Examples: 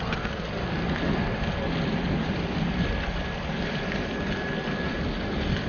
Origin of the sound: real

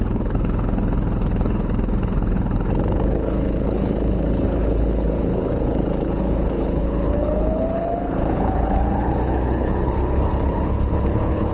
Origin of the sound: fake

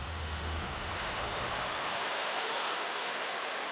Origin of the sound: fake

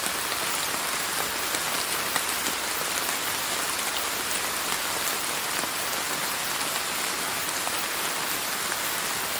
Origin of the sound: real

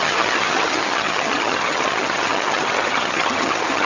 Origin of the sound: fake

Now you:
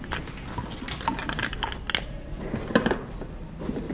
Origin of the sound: real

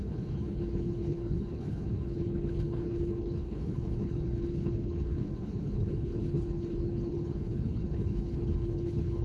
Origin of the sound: fake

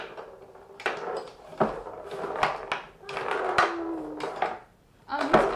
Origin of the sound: real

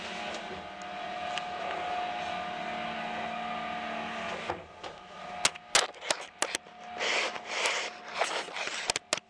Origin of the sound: real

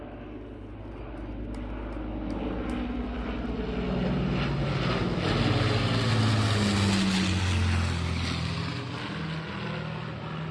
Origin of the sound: real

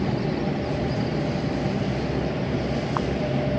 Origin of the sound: real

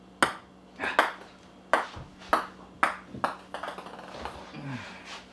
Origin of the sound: real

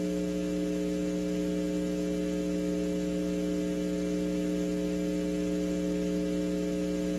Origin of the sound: real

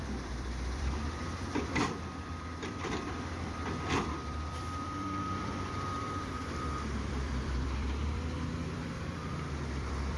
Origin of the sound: fake